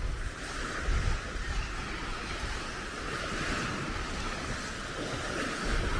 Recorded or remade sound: recorded